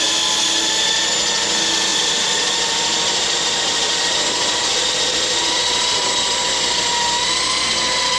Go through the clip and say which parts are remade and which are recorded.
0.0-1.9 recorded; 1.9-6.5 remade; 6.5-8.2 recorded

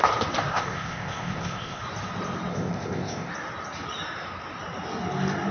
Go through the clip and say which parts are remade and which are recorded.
0.0-0.5 recorded; 0.5-1.8 remade; 1.8-2.5 recorded; 2.5-3.3 remade; 3.3-5.5 recorded

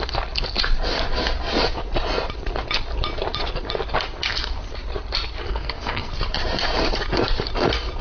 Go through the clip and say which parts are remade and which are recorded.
0.0-5.5 recorded; 5.5-6.1 remade; 6.1-8.0 recorded

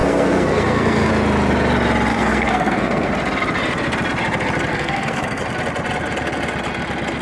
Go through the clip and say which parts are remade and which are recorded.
0.0-1.1 remade; 1.1-2.1 recorded; 2.1-3.1 remade; 3.1-4.7 recorded; 4.7-5.4 remade; 5.4-7.2 recorded

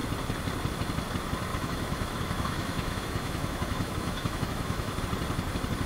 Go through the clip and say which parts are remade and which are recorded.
0.0-1.5 recorded; 1.5-5.0 remade; 5.0-5.9 recorded

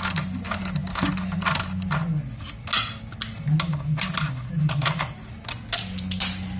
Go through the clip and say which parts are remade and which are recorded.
0.0-6.6 recorded